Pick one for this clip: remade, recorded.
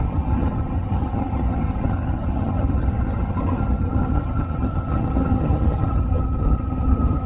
remade